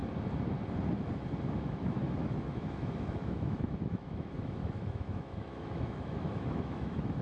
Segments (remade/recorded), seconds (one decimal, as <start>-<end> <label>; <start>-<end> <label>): 0.0-1.5 recorded; 1.5-7.2 remade